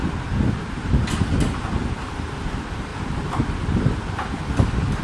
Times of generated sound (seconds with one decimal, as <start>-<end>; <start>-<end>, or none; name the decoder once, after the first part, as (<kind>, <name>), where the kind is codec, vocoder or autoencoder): 2.9-4.0 (vocoder, BigVGAN v2)

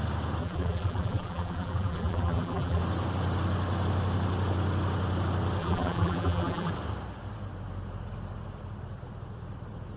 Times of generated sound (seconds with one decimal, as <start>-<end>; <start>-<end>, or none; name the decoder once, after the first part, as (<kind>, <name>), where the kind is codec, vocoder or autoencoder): 0.4-2.8 (vocoder, BigVGAN v2); 5.6-6.7

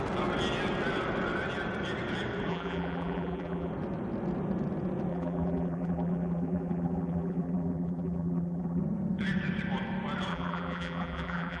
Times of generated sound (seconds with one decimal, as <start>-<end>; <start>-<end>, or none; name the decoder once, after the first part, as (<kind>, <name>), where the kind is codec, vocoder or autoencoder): 2.5-3.7 (vocoder, BigVGAN v2); 5.1-8.8; 10.3-11.6

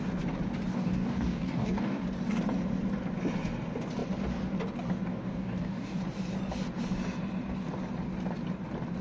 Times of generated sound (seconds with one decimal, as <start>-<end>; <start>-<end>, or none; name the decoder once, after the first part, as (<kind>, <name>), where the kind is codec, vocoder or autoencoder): 0.7-2.0 (codec, DAC); 5.1-6.0

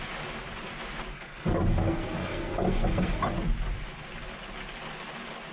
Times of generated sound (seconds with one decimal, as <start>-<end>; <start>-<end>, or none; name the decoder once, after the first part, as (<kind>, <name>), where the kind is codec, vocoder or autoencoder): 1.1-3.2 (codec, SNAC)

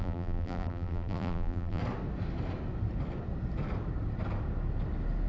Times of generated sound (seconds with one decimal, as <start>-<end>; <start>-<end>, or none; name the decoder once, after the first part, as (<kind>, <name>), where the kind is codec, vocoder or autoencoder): 0.0-1.8 (vocoder, BigVGAN v2)

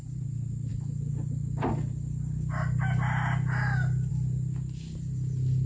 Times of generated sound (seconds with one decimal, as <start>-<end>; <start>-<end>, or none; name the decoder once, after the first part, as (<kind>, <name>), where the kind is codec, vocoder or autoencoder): none